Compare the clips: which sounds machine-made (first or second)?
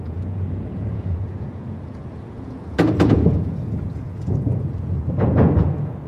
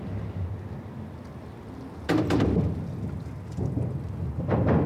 first